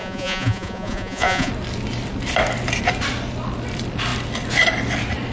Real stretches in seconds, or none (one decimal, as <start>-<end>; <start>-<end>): 1.5-5.3